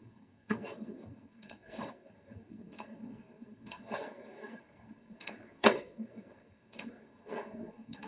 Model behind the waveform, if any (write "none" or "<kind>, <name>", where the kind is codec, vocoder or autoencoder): codec, SNAC